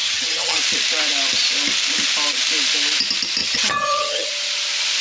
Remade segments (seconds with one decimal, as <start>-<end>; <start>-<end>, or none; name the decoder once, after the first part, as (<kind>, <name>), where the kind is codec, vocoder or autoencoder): 0.0-0.6 (vocoder, HiFi-GAN); 3.4-4.3